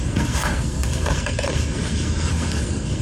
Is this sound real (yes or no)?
no